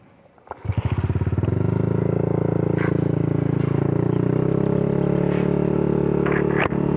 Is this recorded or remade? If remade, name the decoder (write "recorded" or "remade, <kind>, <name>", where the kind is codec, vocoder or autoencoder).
recorded